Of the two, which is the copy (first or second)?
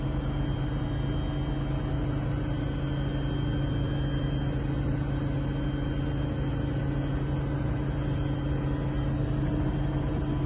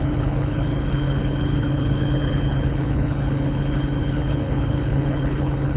second